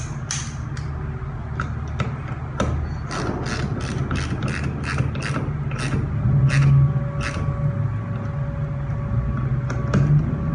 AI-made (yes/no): no